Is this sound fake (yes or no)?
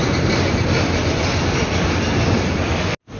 no